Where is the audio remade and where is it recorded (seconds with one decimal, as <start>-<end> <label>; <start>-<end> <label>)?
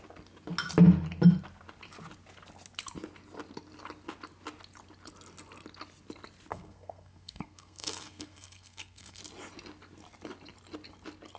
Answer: 0.0-6.5 recorded; 6.5-9.2 remade; 9.2-11.4 recorded